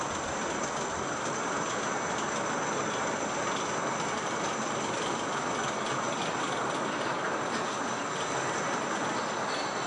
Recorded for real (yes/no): yes